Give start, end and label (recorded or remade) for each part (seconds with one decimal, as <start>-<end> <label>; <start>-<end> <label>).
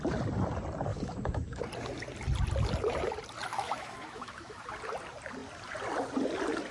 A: 0.0-0.9 recorded; 0.9-1.6 remade; 1.6-3.5 recorded; 3.5-4.7 remade; 4.7-6.7 recorded